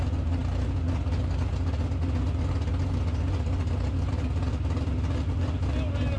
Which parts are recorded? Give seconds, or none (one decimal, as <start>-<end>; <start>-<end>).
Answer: 0.0-6.2